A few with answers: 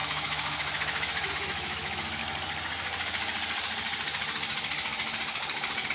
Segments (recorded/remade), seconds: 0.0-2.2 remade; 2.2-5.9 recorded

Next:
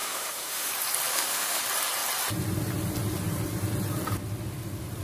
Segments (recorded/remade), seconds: 0.0-0.7 remade; 0.7-1.1 recorded; 1.1-1.6 remade; 1.6-5.0 recorded

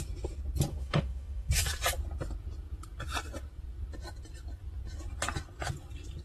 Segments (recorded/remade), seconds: 0.0-0.7 recorded; 0.7-1.5 remade; 1.5-6.2 recorded

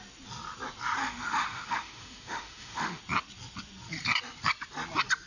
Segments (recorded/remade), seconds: 0.0-1.0 recorded; 1.0-3.0 remade; 3.0-5.3 recorded

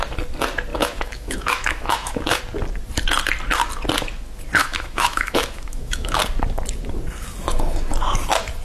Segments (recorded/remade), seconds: 0.0-0.7 recorded; 0.7-2.4 remade; 2.4-4.6 recorded; 4.6-6.2 remade; 6.2-8.6 recorded

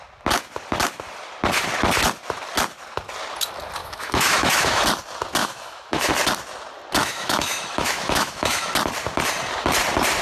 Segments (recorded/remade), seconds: 0.0-3.8 recorded; 3.8-4.8 remade; 4.8-5.4 recorded; 5.4-6.1 remade; 6.1-7.0 recorded; 7.0-8.7 remade; 8.7-10.2 recorded